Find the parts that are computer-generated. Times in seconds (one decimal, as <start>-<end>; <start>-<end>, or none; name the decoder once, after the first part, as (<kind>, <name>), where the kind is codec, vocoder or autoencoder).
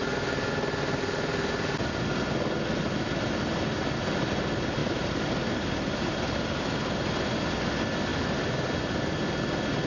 4.8-6.3 (vocoder, BigVGAN v2); 8.1-9.0